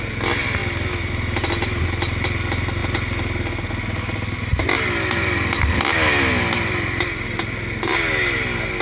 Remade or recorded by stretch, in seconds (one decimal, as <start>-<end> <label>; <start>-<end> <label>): 0.0-8.8 recorded